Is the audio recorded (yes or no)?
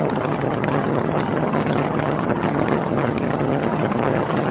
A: no